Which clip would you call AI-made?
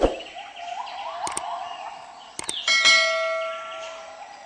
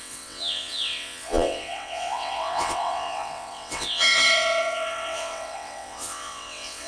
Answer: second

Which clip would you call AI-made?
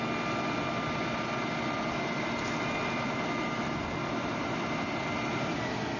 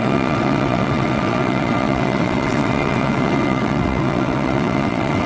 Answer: second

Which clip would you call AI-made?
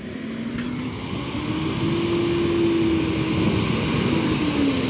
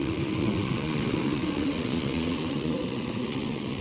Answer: second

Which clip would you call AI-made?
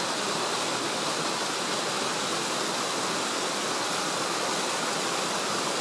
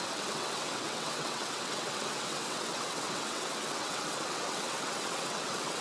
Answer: second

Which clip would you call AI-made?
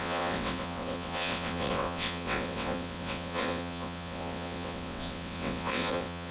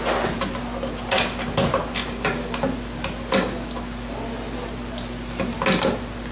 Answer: first